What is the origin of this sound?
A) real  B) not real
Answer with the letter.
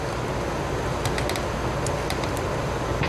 A